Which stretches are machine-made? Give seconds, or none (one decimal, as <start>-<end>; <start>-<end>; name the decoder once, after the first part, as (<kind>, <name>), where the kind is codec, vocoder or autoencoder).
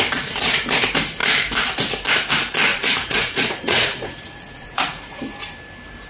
2.7-5.2 (vocoder, Vocos)